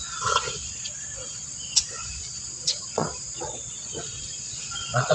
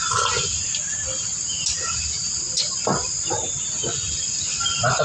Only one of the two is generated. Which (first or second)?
first